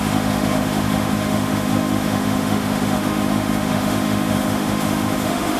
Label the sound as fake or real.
fake